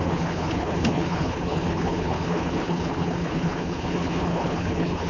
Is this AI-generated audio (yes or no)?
yes